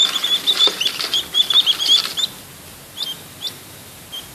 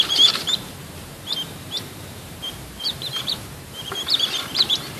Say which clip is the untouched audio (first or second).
first